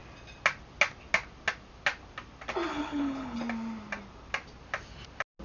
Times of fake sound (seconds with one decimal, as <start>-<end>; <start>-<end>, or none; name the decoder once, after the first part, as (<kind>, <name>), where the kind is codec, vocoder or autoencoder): 2.7-3.4 (codec, HILCodec)